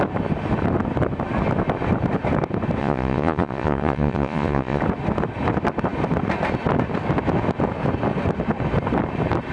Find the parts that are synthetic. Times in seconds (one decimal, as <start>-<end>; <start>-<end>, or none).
2.8-4.8